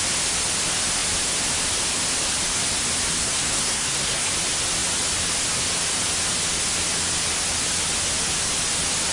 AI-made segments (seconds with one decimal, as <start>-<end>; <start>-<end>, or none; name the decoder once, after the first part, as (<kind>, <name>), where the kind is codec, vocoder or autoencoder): 3.2-4.3 (codec, SNAC)